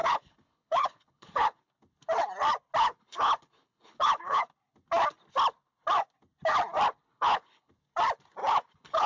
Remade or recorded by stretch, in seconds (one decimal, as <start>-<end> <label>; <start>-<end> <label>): 0.0-1.7 remade; 1.7-2.8 recorded; 2.8-4.4 remade; 4.4-7.1 recorded; 7.1-7.7 remade; 7.7-8.4 recorded; 8.4-9.1 remade